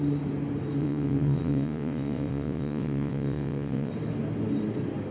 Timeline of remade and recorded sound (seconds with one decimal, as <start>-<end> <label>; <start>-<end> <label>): 0.0-0.8 recorded; 0.8-3.9 remade; 3.9-5.1 recorded